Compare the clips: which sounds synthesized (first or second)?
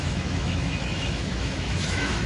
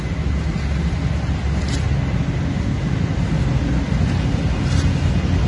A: first